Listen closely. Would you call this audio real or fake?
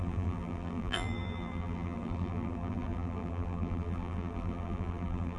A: fake